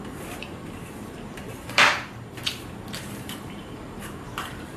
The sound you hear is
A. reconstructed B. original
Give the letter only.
A